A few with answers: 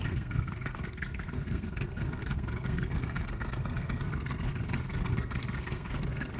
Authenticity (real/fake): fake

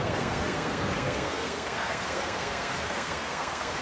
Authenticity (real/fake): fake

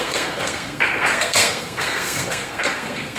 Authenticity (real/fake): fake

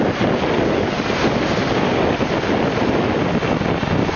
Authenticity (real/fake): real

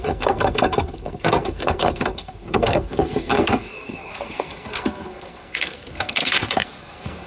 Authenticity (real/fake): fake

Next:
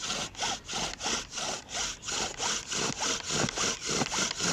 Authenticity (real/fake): real